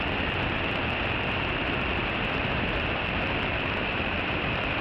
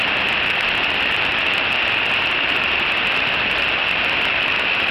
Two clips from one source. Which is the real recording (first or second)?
first